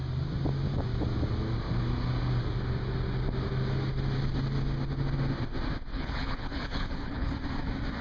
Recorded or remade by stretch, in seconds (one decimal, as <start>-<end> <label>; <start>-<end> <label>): 0.0-5.9 recorded; 5.9-7.3 remade; 7.3-8.0 recorded